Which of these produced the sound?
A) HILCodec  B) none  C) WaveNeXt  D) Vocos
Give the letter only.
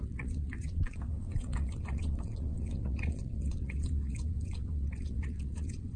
C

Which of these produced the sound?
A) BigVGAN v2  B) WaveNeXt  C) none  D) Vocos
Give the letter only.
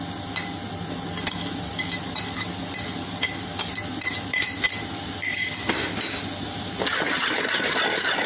C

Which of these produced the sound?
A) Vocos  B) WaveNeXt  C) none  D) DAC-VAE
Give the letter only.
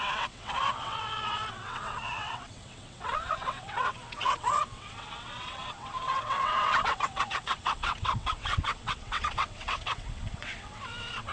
B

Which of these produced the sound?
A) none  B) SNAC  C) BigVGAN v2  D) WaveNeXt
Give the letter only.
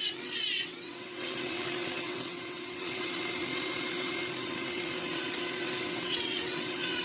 D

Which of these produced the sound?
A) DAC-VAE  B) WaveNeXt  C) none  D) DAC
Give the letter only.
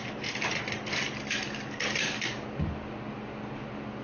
C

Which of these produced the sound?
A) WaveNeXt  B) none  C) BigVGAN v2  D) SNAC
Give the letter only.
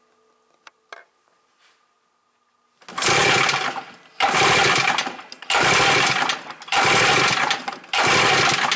B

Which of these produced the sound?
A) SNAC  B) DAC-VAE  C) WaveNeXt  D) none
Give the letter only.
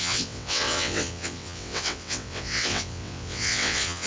C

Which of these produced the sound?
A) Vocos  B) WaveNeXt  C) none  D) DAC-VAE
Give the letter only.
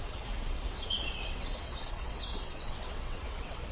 B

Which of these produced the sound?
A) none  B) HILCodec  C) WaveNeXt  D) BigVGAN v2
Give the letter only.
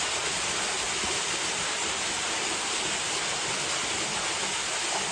A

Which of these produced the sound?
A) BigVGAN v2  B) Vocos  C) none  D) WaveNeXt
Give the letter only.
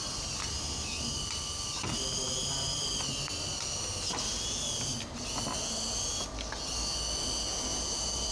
C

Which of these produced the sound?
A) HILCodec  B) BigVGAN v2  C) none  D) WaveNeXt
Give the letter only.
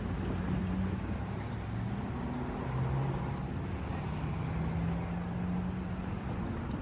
C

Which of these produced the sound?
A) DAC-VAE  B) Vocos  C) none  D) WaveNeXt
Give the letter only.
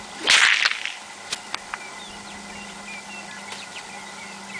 C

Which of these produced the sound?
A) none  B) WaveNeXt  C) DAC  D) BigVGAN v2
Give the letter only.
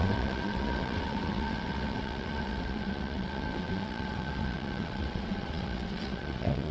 B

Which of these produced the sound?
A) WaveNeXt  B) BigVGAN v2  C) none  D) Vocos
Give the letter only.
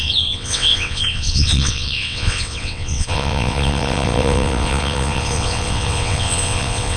A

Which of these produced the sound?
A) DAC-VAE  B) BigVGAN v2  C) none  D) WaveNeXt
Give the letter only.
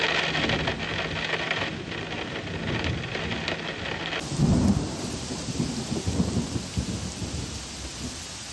C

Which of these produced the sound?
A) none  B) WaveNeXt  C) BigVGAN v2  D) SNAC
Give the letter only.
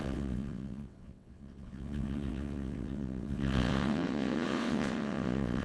B